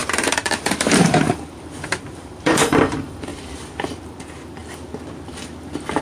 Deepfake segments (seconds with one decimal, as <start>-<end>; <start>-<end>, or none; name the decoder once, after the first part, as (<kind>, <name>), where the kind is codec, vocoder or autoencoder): 0.0-3.3 (vocoder, BigVGAN v2); 4.0-4.6